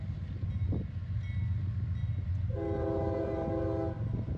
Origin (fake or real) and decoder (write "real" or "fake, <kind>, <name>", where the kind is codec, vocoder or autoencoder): real